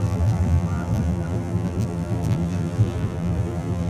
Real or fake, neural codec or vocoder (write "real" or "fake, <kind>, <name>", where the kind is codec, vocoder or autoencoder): fake, vocoder, BigVGAN v2